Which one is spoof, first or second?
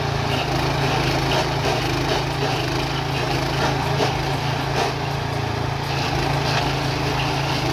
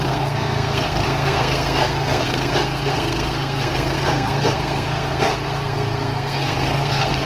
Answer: second